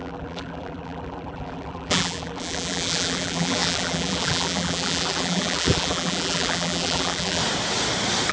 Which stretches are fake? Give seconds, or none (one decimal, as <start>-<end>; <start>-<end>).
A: 0.0-7.4